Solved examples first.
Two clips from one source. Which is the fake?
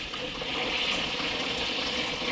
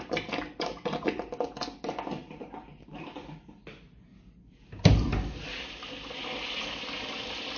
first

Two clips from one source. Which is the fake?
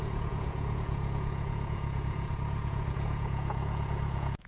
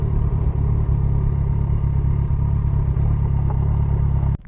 first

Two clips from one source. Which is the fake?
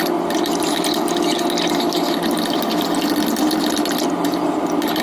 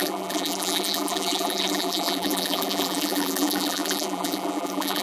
second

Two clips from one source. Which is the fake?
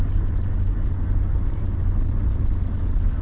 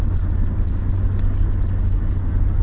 first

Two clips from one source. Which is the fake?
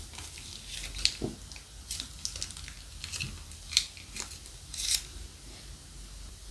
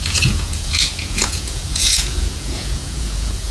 second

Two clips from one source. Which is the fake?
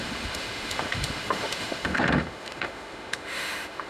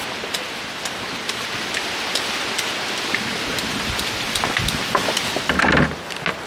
first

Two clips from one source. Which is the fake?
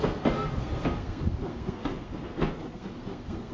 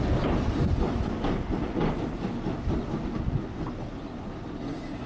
first